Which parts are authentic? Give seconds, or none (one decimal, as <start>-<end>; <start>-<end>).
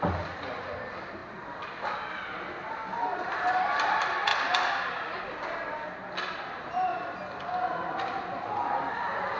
1.2-2.7; 4.3-6.5; 6.9-8.2